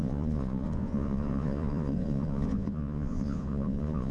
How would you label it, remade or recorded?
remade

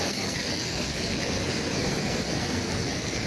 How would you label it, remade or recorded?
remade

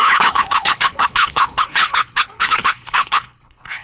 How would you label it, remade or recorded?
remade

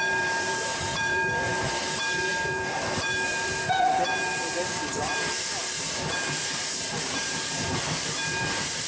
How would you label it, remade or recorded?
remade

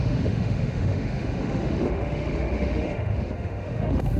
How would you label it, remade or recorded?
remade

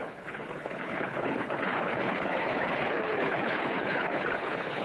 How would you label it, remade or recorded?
remade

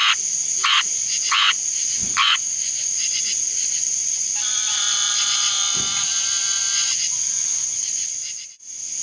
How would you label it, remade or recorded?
remade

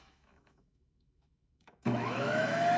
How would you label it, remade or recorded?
remade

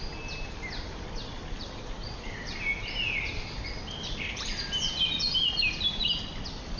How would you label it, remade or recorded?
recorded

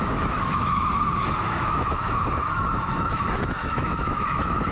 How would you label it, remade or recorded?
remade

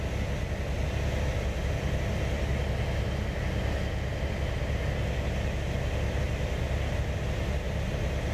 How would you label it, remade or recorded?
recorded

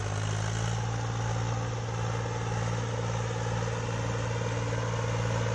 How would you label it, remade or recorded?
recorded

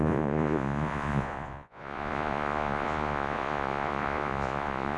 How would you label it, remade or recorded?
remade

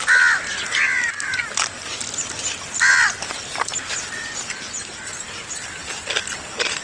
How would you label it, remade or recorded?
recorded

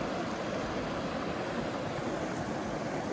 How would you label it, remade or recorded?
recorded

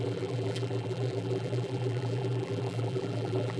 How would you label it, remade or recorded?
remade